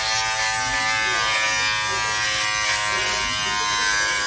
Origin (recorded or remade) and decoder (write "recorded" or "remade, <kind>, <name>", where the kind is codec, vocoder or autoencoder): recorded